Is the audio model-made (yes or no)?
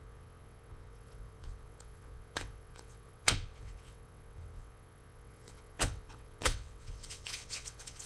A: yes